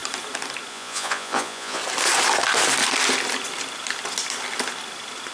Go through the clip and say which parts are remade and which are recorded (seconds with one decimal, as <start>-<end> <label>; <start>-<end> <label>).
0.0-0.7 recorded; 0.7-1.8 remade; 1.8-5.3 recorded